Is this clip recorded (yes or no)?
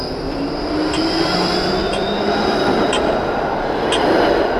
yes